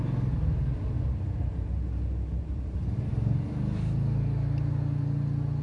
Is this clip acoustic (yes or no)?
yes